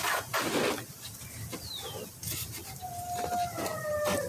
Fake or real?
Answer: real